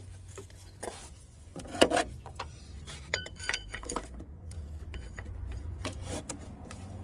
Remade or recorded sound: remade